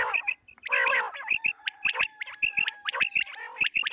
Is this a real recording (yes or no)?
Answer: yes